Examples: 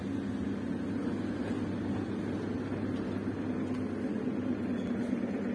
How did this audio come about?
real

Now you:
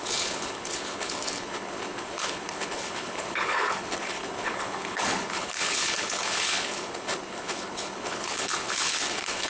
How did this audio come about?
fake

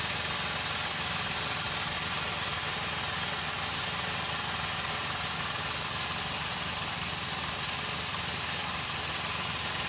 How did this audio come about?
real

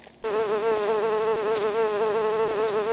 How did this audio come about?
real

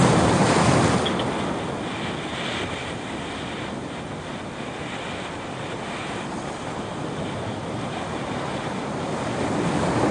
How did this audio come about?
real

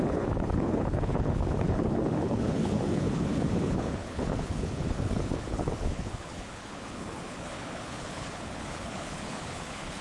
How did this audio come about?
fake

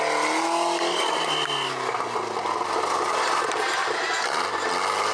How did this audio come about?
real